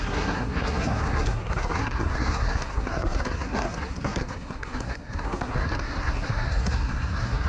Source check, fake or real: fake